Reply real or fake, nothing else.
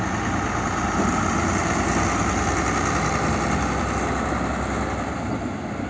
real